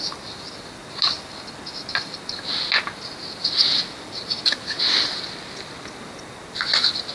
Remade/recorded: recorded